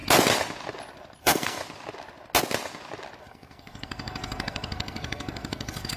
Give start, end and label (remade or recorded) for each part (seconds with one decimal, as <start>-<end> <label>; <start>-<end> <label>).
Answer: 0.0-1.2 recorded; 1.2-1.6 remade; 1.6-3.2 recorded; 3.2-6.0 remade